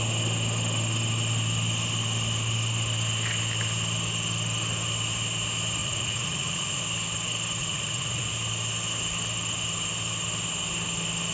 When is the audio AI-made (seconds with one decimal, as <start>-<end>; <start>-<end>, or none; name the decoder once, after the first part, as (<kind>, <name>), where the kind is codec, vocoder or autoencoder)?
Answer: 5.8-6.8 (vocoder, Vocos); 7.6-8.3